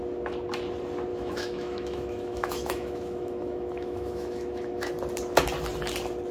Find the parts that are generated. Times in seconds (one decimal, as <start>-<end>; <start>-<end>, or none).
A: 1.1-4.9